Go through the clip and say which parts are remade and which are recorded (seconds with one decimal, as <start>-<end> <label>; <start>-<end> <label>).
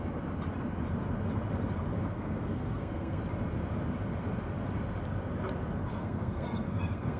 0.0-1.9 recorded; 1.9-3.2 remade; 3.2-5.9 recorded; 5.9-7.2 remade